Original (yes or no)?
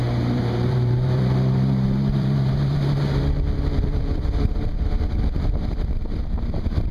no